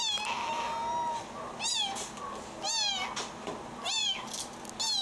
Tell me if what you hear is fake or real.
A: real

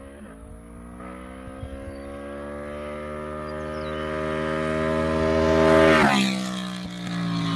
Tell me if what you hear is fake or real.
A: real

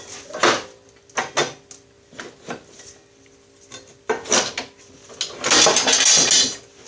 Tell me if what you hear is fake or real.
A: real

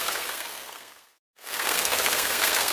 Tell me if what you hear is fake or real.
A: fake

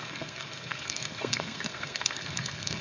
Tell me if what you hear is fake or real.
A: fake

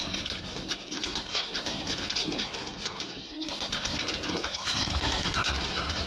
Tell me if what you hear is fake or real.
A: fake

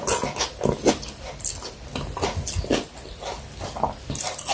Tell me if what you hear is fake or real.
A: real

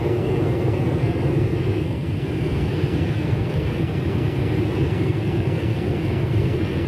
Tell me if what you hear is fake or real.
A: fake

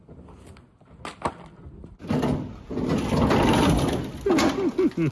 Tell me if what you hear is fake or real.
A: real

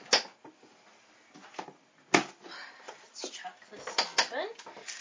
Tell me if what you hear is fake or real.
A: real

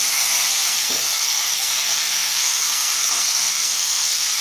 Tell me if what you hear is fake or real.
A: fake